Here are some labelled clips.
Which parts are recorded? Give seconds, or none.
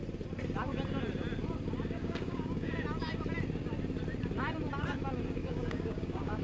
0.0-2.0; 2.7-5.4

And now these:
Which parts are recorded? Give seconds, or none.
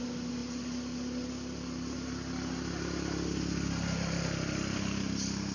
0.0-5.5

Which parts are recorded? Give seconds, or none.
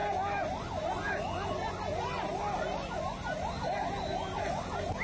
0.0-5.0